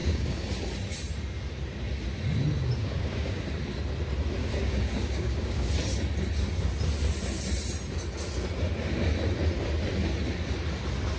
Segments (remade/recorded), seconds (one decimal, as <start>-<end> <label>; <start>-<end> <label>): 0.0-0.5 remade; 0.5-2.8 recorded; 2.8-3.5 remade; 3.5-4.4 recorded; 4.4-5.7 remade; 5.7-11.2 recorded